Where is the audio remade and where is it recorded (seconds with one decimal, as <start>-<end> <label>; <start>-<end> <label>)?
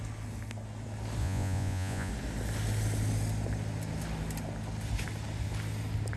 0.0-1.2 recorded; 1.2-2.1 remade; 2.1-6.2 recorded